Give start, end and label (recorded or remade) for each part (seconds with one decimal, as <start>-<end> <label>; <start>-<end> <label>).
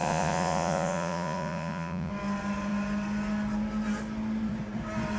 0.0-2.1 remade; 2.1-5.2 recorded